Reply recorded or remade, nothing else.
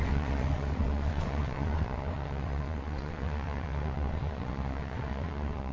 remade